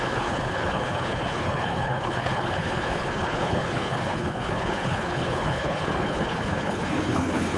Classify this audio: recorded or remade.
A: remade